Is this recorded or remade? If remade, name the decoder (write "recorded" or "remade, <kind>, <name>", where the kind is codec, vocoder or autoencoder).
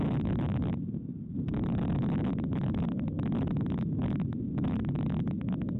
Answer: remade, autoencoder, DAC-VAE